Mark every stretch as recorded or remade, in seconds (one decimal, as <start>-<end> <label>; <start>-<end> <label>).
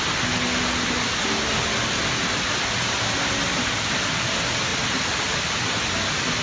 0.0-6.4 recorded